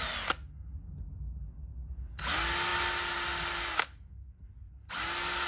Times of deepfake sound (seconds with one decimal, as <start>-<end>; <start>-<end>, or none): none